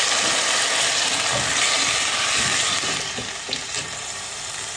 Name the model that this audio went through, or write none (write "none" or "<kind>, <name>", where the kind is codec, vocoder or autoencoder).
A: none